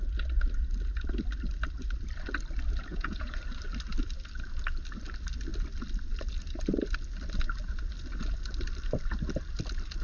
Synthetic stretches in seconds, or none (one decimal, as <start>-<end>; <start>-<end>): 2.9-3.4